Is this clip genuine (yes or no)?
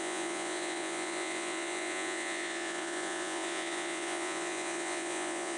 no